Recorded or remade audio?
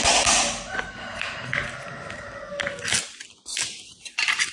recorded